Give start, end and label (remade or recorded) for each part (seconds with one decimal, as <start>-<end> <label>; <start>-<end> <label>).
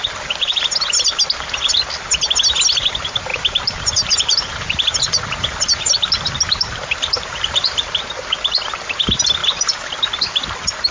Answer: 0.0-3.3 recorded; 3.3-8.1 remade; 8.1-9.4 recorded; 9.4-10.1 remade; 10.1-10.9 recorded